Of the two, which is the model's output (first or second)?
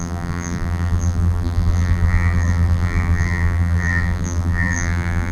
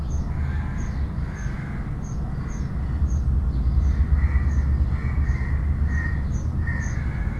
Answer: first